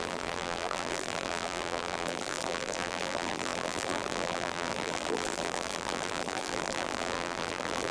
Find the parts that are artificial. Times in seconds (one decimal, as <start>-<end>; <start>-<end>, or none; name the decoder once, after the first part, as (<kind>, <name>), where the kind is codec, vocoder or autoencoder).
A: 0.0-7.9 (vocoder, BigVGAN v2)